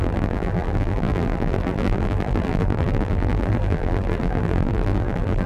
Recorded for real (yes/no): no